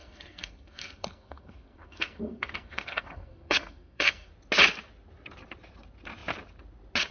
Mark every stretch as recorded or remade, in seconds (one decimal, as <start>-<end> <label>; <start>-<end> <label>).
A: 0.0-4.3 remade; 4.3-7.1 recorded